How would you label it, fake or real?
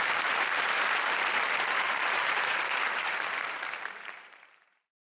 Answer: fake